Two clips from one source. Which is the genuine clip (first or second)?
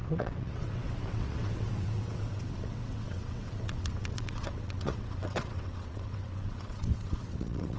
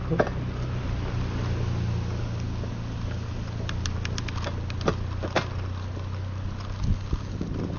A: second